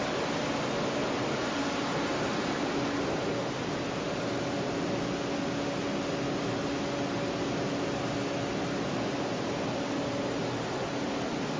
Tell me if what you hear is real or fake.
real